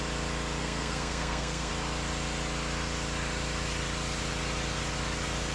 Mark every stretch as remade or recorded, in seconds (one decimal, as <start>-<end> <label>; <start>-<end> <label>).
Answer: 0.0-0.6 recorded; 0.6-1.7 remade; 1.7-5.5 recorded

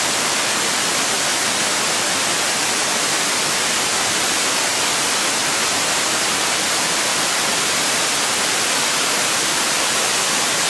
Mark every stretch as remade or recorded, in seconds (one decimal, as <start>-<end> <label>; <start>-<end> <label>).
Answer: 0.0-1.3 remade; 1.3-2.6 recorded; 2.6-4.7 remade; 4.7-6.1 recorded; 6.1-7.1 remade; 7.1-8.4 recorded; 8.4-10.7 remade